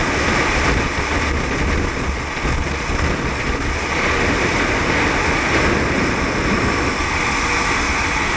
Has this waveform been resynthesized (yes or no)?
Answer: no